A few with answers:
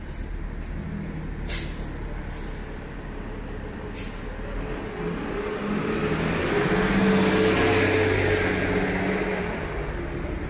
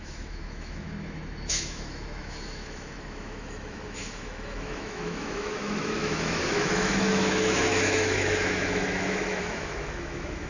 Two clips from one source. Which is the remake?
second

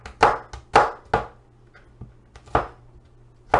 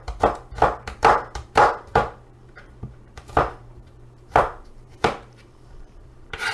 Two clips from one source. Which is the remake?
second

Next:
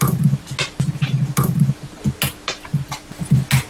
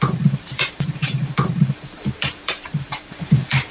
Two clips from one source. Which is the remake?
second